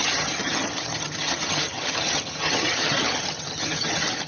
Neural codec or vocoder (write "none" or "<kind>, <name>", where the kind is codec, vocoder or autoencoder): vocoder, HiFi-GAN